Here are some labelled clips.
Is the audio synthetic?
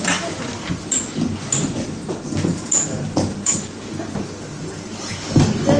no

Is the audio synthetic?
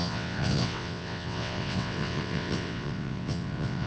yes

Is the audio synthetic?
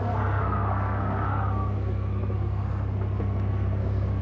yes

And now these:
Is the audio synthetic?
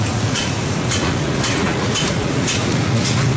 yes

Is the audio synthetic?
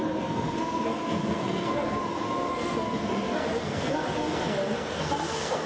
yes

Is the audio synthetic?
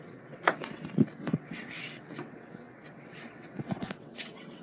yes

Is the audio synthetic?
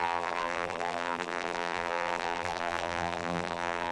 yes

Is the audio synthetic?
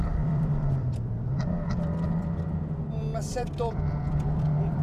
yes